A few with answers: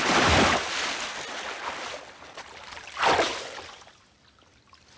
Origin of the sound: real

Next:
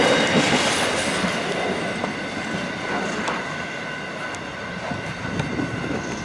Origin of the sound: real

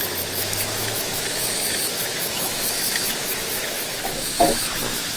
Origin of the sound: fake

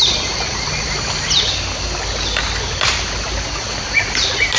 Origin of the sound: real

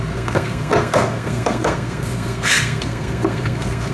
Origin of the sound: fake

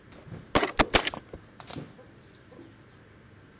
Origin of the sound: real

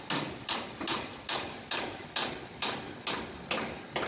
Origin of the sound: real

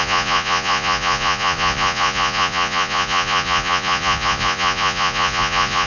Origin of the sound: fake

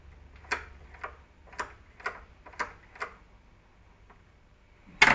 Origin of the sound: real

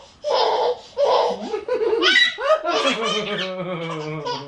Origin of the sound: real